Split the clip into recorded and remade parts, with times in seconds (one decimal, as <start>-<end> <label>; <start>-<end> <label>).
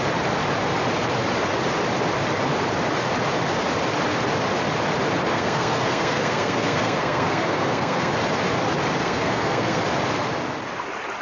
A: 0.0-5.3 recorded; 5.3-8.1 remade; 8.1-9.0 recorded; 9.0-9.8 remade; 9.8-11.2 recorded